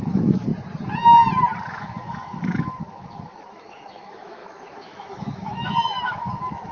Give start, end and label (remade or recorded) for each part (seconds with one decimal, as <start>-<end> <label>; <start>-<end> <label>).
0.0-0.5 remade; 0.5-1.7 recorded; 1.7-6.7 remade